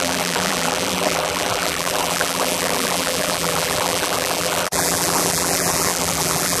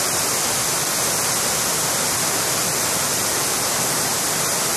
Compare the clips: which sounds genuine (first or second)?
second